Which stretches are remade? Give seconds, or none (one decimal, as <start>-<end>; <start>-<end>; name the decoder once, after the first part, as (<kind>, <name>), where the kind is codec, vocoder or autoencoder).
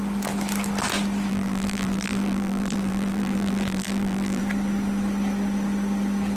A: 1.3-4.4 (vocoder, BigVGAN v2)